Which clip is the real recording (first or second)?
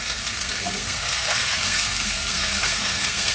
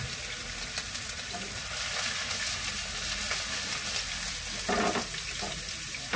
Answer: second